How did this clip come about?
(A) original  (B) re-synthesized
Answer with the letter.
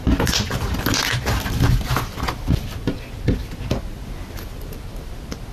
A